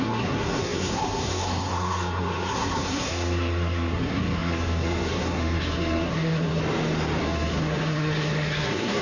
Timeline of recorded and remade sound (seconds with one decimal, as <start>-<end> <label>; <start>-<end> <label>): 0.0-6.6 remade; 6.6-7.2 recorded; 7.2-9.0 remade